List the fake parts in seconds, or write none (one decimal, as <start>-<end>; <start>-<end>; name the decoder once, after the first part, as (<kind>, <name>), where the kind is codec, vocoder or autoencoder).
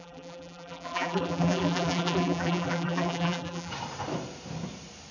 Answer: 0.0-3.7 (vocoder, BigVGAN v2)